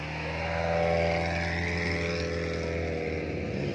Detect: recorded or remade recorded